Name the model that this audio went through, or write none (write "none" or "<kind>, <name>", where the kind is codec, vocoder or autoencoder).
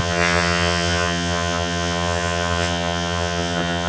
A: vocoder, HiFi-GAN